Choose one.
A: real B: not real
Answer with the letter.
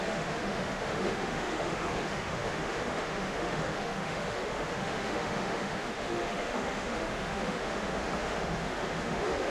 B